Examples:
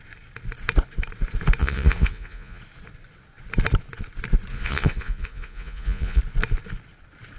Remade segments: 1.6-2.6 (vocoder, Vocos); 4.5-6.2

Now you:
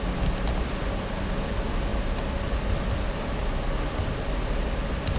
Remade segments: none

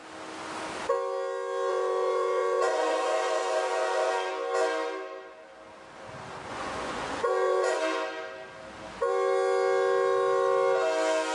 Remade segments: 1.7-4.3 (vocoder, Vocos); 6.5-7.8

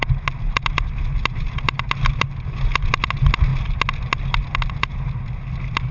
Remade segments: none